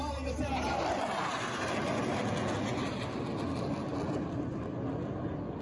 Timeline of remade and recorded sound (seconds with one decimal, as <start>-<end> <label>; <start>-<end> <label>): 0.0-5.6 recorded